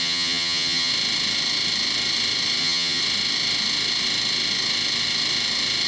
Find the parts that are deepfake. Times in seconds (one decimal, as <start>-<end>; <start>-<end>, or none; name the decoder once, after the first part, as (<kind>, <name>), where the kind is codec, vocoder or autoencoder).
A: 0.0-0.9 (vocoder, HiFi-GAN); 2.6-3.0